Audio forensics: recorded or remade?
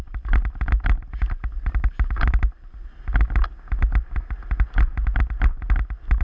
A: recorded